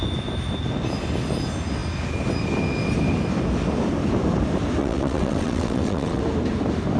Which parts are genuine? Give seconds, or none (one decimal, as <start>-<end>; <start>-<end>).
0.0-4.8; 6.2-7.0